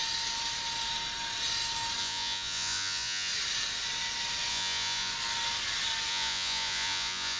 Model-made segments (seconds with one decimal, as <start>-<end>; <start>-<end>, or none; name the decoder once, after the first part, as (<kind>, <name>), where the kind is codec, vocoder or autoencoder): 2.0-3.3 (vocoder, Vocos); 4.5-5.1; 6.1-7.4